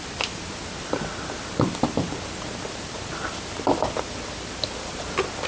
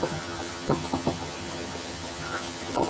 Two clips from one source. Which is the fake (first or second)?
second